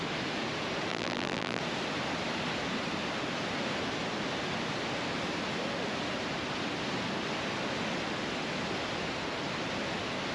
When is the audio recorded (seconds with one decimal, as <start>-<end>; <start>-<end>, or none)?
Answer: 0.0-0.9; 1.6-10.3